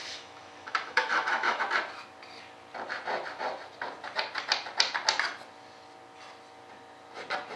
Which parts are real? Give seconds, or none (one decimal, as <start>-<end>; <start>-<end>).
1.6-7.6